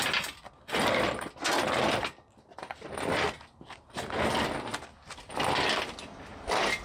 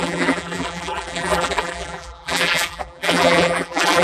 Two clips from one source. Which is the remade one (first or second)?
second